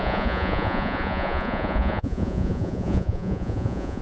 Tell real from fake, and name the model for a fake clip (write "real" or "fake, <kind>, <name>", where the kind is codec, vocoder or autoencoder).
fake, vocoder, Vocos